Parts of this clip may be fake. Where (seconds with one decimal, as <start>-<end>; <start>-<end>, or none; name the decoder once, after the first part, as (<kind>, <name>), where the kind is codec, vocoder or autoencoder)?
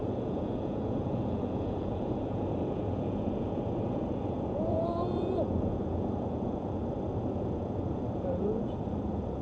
0.0-6.8 (vocoder, Vocos); 7.3-9.4